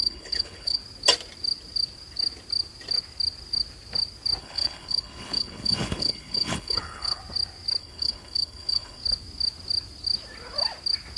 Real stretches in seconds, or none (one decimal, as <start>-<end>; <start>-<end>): 0.8-4.4; 7.2-7.8; 9.0-11.2